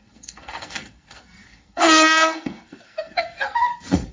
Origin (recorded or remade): remade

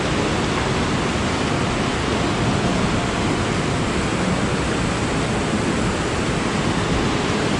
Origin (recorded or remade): recorded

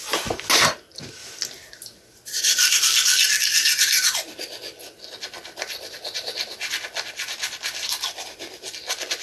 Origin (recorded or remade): recorded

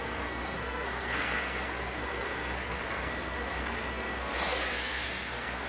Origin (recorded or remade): remade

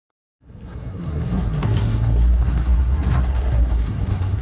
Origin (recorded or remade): remade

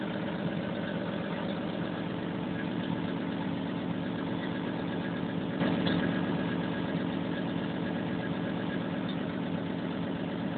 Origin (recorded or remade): recorded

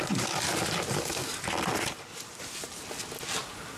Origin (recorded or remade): recorded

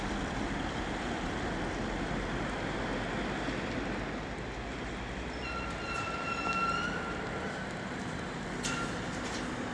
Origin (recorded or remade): recorded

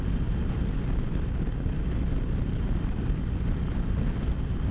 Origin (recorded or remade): recorded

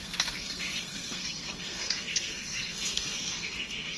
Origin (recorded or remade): remade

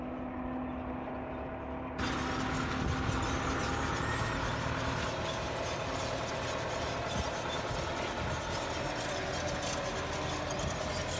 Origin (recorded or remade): recorded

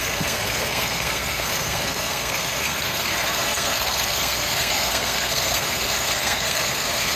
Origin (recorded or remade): remade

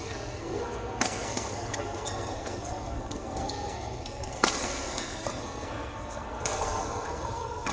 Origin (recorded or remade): remade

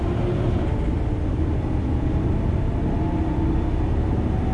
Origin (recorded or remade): recorded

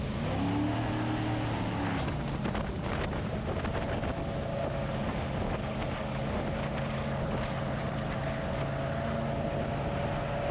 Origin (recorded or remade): recorded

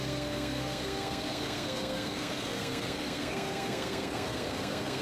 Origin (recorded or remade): remade